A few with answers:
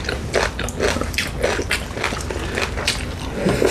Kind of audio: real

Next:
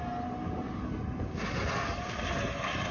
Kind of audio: real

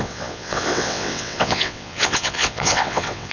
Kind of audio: fake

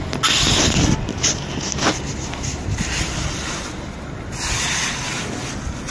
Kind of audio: real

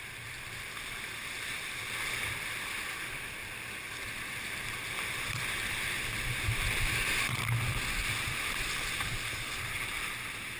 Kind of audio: fake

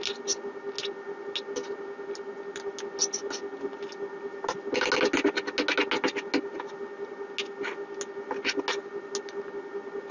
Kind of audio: real